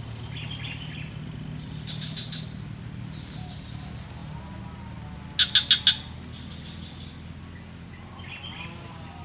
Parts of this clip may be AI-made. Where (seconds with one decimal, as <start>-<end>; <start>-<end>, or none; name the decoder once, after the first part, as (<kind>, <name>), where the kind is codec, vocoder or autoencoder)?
none